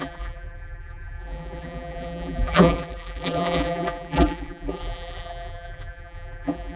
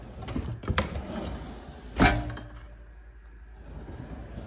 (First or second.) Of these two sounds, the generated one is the first